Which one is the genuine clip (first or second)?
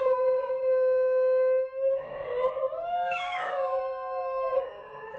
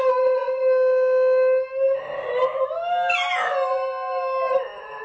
second